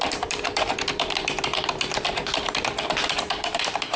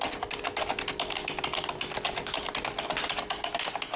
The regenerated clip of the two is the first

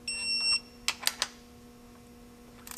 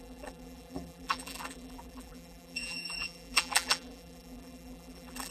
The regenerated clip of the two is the second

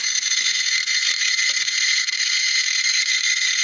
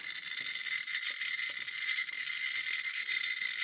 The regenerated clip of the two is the first